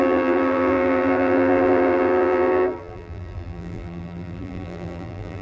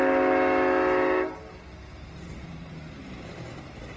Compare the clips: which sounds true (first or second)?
second